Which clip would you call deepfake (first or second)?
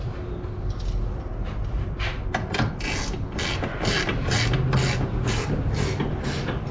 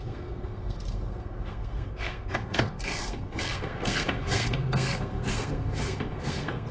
second